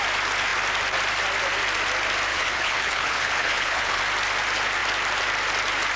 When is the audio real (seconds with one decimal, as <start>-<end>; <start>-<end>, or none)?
0.0-2.3; 4.0-6.0